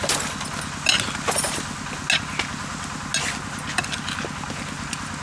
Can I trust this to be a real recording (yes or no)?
yes